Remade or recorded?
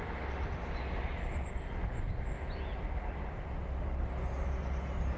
recorded